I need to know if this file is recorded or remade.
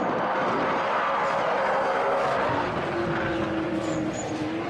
recorded